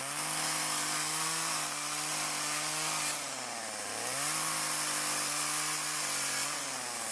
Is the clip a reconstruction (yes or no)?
no